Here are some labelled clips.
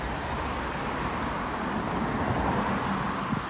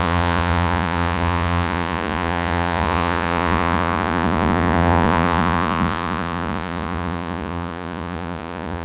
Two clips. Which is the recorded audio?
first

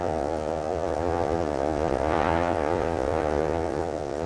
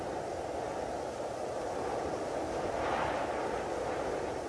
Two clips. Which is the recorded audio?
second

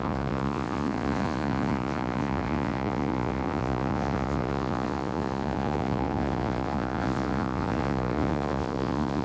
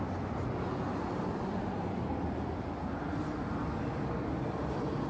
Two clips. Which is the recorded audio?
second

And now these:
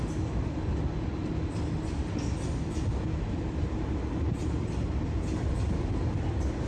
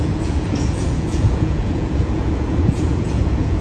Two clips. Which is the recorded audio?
first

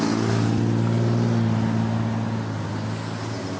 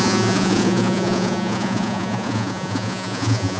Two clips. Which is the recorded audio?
first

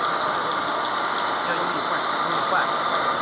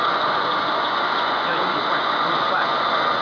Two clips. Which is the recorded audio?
first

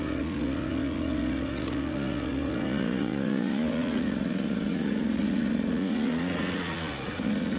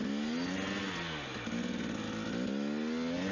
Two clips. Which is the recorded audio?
second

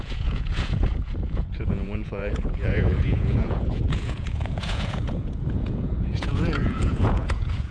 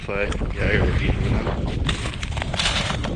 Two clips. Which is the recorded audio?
second